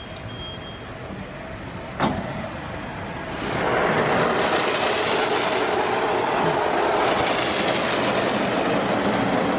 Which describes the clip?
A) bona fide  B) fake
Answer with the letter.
A